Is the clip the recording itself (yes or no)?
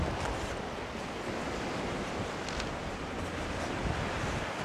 yes